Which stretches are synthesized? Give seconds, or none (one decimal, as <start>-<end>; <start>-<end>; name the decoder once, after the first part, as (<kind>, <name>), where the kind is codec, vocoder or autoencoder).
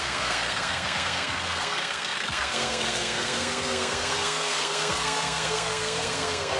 0.0-6.6 (codec, SNAC)